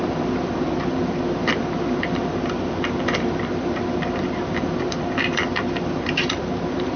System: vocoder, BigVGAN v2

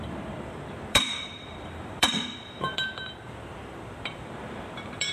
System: vocoder, BigVGAN v2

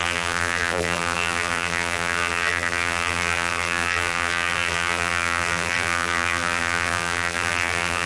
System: vocoder, BigVGAN v2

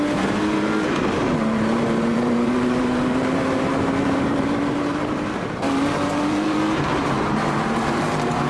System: vocoder, BigVGAN v2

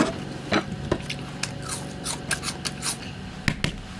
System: none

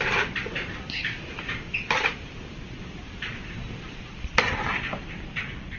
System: vocoder, BigVGAN v2